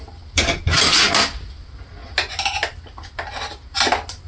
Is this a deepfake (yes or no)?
no